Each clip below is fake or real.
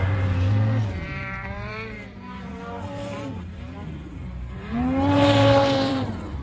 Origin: fake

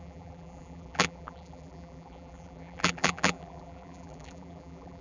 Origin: fake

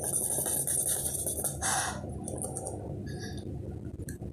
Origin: real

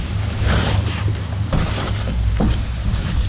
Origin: fake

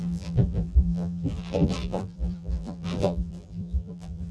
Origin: fake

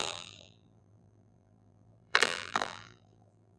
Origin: fake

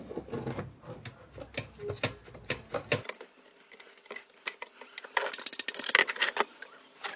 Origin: real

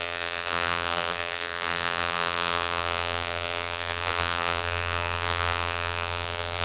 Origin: fake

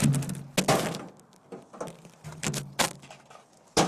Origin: real